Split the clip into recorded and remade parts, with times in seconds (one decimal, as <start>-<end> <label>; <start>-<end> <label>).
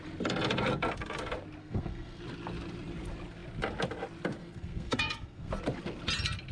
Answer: 0.0-1.6 recorded; 1.6-2.2 remade; 2.2-4.4 recorded; 4.4-5.5 remade; 5.5-6.5 recorded